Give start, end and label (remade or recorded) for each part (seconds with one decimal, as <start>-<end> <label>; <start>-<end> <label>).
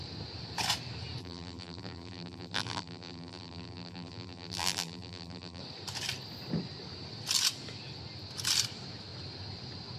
0.0-1.2 recorded; 1.2-5.6 remade; 5.6-10.0 recorded